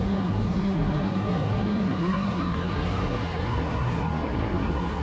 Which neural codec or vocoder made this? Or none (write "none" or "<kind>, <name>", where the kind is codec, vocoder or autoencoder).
codec, SNAC